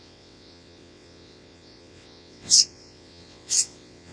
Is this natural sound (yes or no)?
no